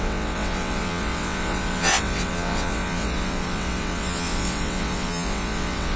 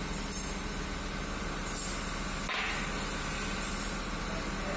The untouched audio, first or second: second